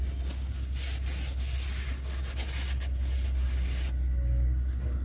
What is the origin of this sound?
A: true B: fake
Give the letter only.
A